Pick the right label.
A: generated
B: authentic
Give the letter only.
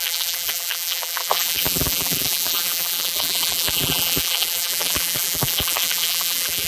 A